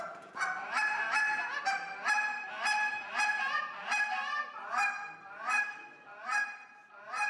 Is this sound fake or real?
real